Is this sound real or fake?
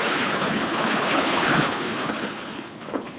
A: fake